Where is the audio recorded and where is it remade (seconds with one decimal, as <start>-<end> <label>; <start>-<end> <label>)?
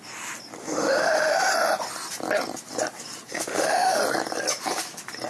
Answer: 0.0-0.6 recorded; 0.6-1.5 remade; 1.5-3.3 recorded; 3.3-4.0 remade; 4.0-5.3 recorded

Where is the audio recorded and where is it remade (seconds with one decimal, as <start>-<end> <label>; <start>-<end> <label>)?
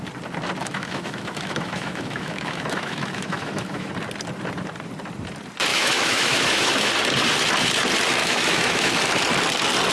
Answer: 0.0-0.6 recorded; 0.6-3.9 remade; 3.9-5.7 recorded; 5.7-6.9 remade; 6.9-8.2 recorded; 8.2-8.9 remade; 8.9-9.9 recorded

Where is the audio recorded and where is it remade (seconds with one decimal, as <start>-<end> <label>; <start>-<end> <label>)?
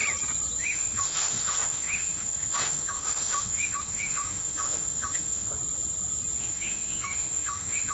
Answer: 0.0-0.6 recorded; 0.6-5.5 remade; 5.5-6.4 recorded; 6.4-7.9 remade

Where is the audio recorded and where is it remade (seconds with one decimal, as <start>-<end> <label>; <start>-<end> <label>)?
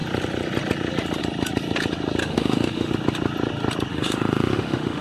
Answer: 0.0-2.2 recorded; 2.2-2.9 remade; 2.9-3.9 recorded; 3.9-5.0 remade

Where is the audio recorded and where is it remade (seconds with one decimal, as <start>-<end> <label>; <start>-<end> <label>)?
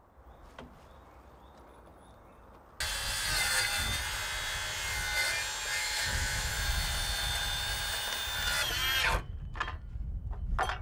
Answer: 0.0-5.8 recorded; 5.8-6.5 remade; 6.5-10.8 recorded